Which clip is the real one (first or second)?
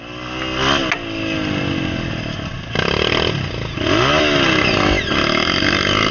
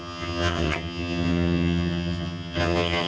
first